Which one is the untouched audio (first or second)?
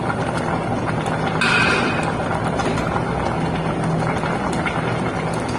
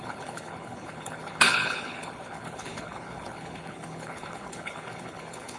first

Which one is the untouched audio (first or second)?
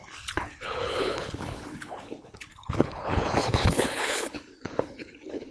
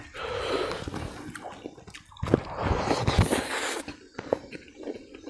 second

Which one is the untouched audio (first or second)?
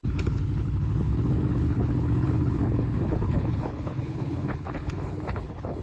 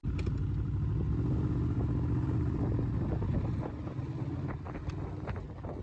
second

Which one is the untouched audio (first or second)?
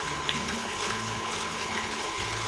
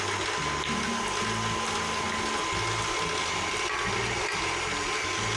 second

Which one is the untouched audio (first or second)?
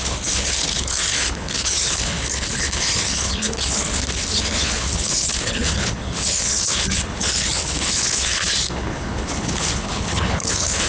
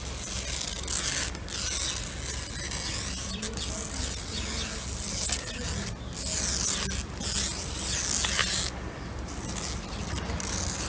second